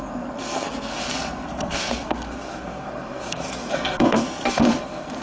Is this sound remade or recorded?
remade